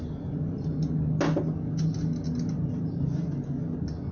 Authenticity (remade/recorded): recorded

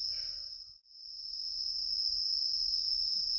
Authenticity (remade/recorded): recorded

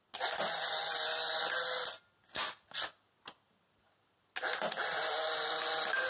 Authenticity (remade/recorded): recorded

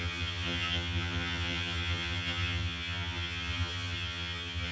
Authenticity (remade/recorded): remade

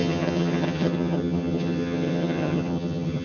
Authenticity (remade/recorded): remade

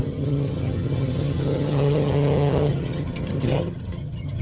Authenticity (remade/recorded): remade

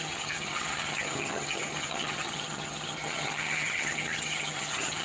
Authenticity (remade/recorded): remade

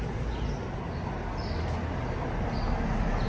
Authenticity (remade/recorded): recorded